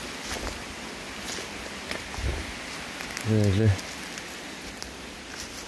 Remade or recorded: recorded